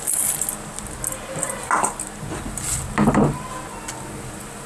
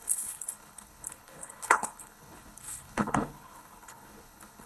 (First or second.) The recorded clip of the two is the first